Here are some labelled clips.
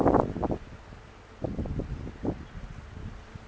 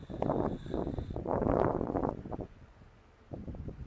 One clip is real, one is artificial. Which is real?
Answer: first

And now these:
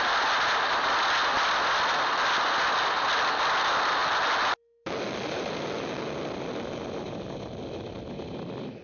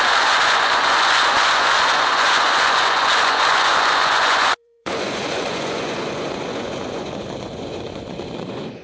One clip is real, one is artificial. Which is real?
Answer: first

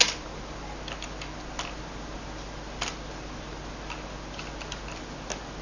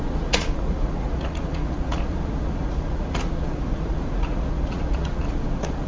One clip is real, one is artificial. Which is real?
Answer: first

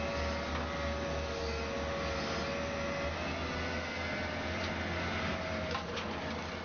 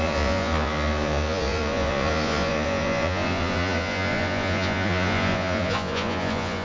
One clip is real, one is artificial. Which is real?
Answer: first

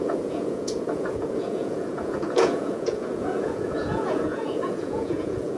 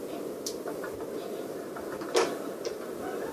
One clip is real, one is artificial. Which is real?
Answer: second